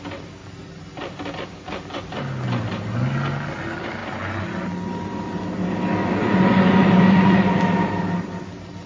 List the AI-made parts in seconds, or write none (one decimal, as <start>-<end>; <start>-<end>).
6.0-7.6